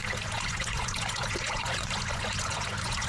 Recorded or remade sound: remade